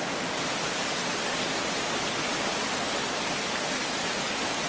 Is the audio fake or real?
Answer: real